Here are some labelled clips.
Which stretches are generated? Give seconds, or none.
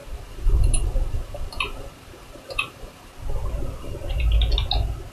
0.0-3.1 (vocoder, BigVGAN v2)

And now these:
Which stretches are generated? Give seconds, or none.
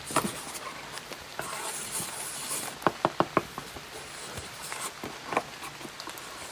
none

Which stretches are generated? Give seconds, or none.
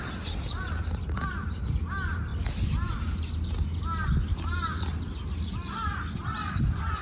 none